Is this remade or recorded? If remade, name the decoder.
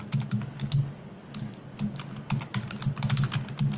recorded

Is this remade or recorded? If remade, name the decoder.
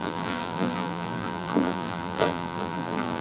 remade, vocoder, BigVGAN v2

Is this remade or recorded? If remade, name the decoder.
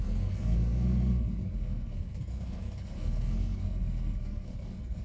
remade, codec, SNAC